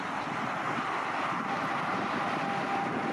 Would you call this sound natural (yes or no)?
yes